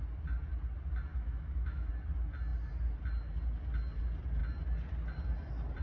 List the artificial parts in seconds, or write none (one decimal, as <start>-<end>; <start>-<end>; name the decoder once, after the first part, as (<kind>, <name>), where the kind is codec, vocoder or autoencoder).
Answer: 1.1-1.9 (autoencoder, DAC-VAE)